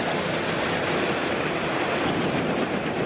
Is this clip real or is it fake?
real